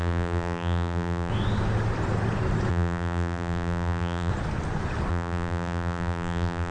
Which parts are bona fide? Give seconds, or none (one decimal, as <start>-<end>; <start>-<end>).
1.3-2.7; 4.3-5.1